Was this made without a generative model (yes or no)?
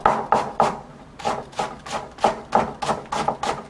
yes